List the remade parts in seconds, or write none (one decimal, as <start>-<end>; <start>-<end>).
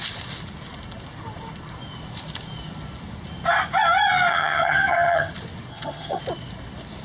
4.3-5.3; 5.7-6.2